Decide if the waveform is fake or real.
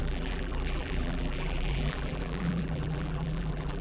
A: fake